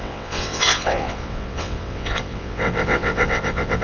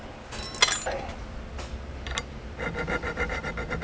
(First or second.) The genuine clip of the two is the second